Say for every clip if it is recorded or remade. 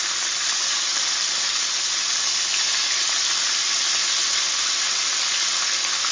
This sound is recorded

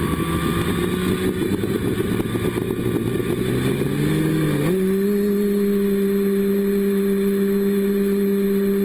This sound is recorded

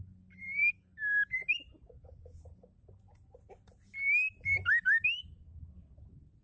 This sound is recorded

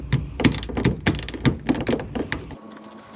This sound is recorded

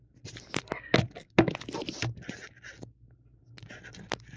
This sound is recorded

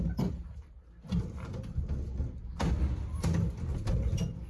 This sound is recorded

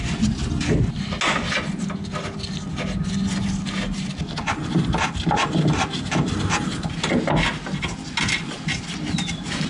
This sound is recorded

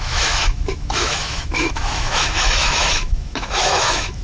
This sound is remade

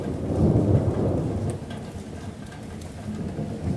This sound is recorded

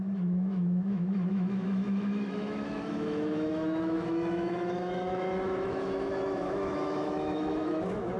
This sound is remade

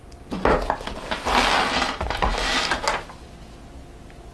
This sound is recorded